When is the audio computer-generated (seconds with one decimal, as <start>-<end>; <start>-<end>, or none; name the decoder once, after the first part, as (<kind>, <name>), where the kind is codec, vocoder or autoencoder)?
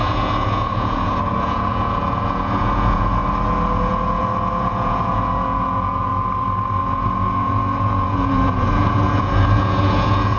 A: 0.0-3.2 (vocoder, Vocos); 3.9-6.1; 6.8-10.4